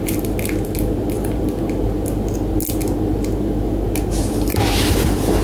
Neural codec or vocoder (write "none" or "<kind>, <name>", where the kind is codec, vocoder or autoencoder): none